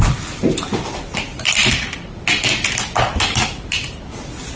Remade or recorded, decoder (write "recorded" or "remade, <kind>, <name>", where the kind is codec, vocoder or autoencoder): recorded